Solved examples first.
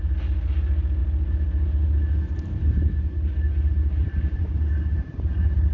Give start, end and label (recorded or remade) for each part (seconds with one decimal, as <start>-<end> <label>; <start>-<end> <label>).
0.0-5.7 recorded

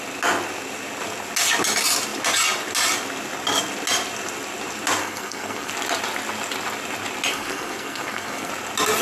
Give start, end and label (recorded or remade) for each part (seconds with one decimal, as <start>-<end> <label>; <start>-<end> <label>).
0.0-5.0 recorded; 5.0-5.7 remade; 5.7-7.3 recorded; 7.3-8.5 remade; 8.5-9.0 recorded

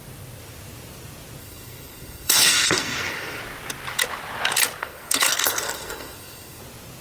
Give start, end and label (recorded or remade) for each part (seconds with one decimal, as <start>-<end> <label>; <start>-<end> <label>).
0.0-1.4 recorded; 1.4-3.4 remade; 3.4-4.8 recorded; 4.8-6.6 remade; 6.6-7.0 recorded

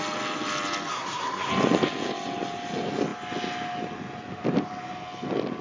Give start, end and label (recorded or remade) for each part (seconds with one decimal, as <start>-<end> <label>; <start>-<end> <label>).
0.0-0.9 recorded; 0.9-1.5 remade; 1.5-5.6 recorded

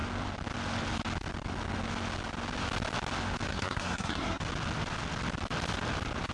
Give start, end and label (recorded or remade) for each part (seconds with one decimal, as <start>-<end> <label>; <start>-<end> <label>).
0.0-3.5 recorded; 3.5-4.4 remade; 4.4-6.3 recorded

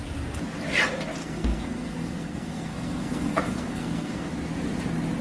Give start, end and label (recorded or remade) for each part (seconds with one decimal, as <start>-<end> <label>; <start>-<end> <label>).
0.0-1.2 recorded; 1.2-4.3 remade; 4.3-5.2 recorded